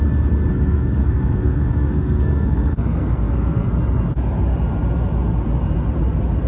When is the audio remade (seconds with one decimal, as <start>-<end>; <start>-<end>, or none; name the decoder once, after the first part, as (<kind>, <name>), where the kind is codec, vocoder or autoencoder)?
0.5-3.7 (codec, SNAC)